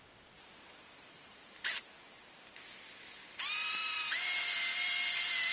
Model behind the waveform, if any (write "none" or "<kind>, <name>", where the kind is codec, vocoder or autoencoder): vocoder, BigVGAN v2